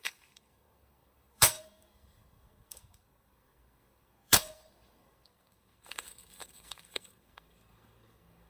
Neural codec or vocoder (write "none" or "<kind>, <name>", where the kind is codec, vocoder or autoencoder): codec, SNAC